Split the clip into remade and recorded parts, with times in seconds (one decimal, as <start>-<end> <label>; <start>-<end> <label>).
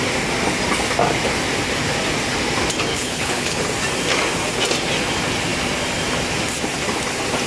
0.0-2.9 recorded; 2.9-3.6 remade; 3.6-7.5 recorded